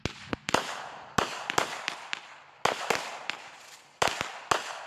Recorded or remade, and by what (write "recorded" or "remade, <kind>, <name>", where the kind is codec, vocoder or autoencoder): recorded